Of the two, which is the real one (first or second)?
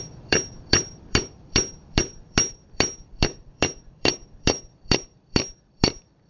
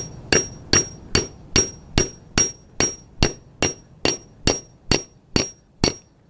second